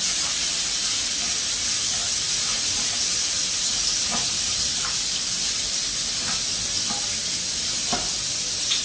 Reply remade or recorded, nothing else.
recorded